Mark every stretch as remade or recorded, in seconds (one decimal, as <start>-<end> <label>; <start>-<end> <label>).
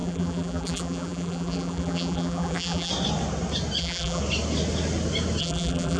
0.0-2.9 remade; 2.9-3.8 recorded; 3.8-4.2 remade; 4.2-5.4 recorded; 5.4-6.0 remade